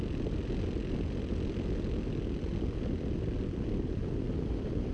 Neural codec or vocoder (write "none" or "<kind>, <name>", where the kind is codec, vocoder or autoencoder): none